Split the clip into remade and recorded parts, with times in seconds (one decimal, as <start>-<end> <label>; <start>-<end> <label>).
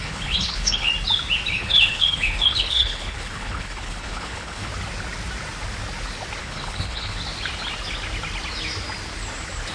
0.0-0.9 remade; 0.9-1.5 recorded; 1.5-4.7 remade; 4.7-6.4 recorded; 6.4-7.2 remade; 7.2-9.7 recorded